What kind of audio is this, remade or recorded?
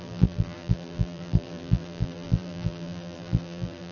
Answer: remade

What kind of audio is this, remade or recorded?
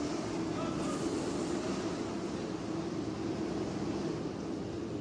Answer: recorded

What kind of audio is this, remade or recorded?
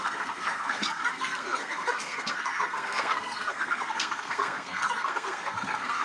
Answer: remade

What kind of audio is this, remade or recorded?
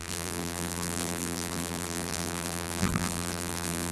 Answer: remade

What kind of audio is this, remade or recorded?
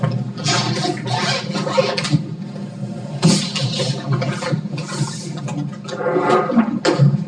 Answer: recorded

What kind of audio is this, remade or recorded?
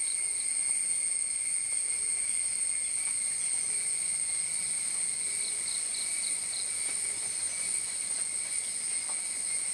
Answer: remade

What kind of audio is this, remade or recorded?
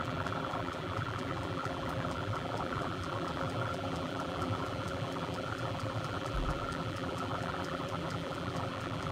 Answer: remade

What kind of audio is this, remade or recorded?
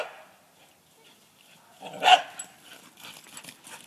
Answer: recorded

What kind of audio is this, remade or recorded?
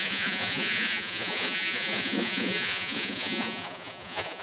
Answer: remade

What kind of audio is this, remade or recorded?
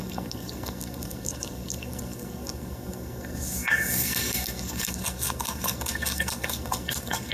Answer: remade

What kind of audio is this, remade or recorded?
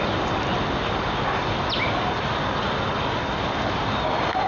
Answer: recorded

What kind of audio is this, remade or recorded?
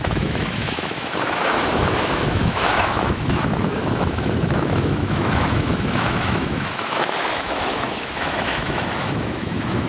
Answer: remade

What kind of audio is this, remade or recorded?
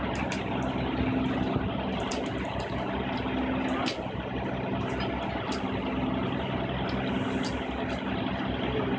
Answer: recorded